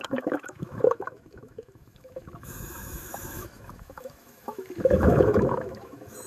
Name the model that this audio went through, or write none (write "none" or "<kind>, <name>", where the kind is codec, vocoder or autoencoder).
autoencoder, DAC-VAE